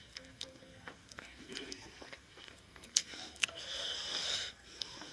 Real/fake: fake